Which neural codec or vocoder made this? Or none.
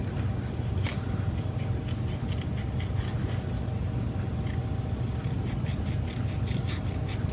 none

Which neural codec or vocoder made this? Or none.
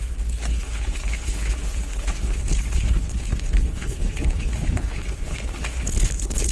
codec, HILCodec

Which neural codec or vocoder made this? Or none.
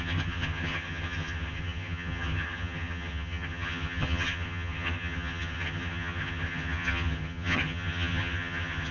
vocoder, HiFi-GAN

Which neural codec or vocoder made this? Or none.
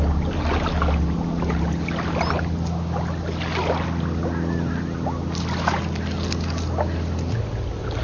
none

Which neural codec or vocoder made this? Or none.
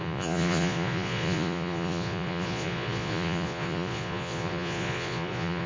vocoder, Vocos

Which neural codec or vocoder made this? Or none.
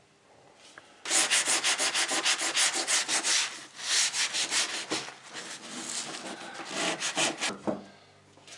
none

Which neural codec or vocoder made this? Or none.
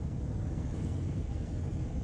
codec, SNAC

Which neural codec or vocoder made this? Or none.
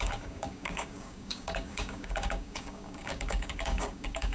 codec, DAC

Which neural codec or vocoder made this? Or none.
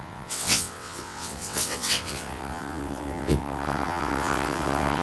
vocoder, WaveNeXt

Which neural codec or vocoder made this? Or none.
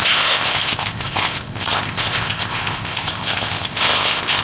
codec, ZipCodec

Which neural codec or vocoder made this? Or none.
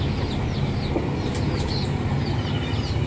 none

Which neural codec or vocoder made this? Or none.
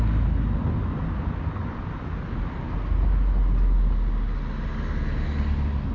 none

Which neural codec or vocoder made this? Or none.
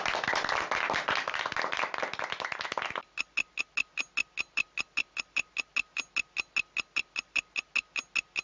none